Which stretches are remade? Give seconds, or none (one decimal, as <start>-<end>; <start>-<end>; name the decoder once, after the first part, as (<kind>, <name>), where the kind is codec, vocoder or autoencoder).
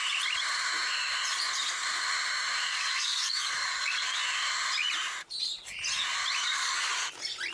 2.7-4.2 (codec, DAC); 6.4-6.9